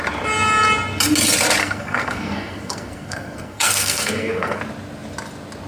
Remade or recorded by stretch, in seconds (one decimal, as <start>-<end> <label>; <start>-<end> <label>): 0.0-1.6 recorded; 1.6-4.6 remade; 4.6-5.7 recorded